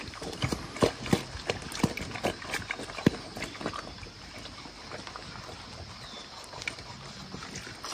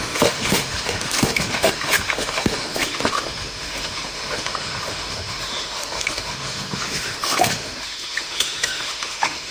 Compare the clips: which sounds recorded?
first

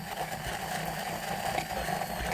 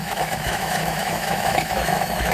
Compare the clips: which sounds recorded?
first